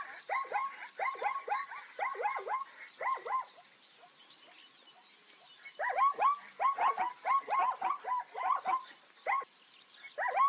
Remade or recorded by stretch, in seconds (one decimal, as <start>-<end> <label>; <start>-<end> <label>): 0.0-10.5 recorded